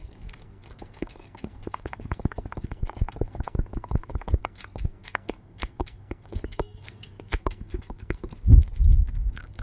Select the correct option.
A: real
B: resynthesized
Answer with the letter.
B